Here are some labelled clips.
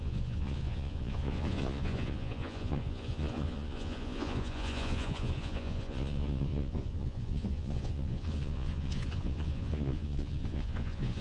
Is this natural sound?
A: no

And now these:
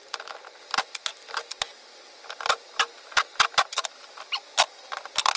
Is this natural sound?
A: yes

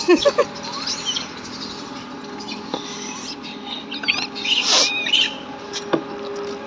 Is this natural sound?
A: yes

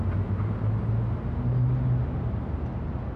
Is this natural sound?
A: yes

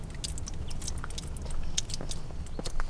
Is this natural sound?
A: yes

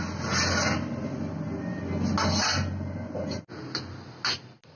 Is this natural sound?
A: yes